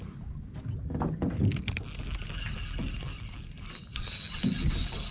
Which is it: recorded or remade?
recorded